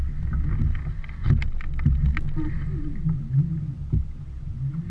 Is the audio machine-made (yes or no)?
no